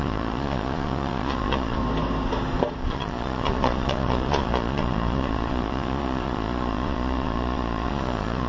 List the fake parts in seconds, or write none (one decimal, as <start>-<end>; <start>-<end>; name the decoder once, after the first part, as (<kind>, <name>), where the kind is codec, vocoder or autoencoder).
0.0-1.8 (vocoder, Vocos); 2.8-8.5